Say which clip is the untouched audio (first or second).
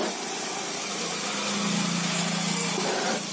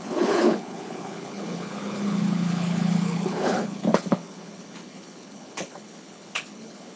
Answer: first